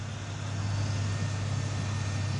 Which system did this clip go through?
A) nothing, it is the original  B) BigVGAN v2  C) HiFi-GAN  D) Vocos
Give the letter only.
A